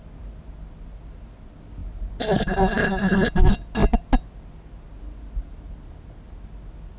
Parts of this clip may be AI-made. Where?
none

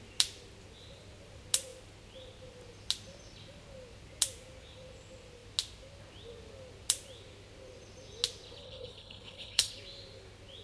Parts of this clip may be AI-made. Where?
8.6-9.7 (codec, HILCodec)

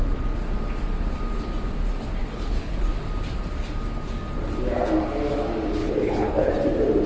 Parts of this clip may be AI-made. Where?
2.2-2.8 (codec, HILCodec); 5.8-6.5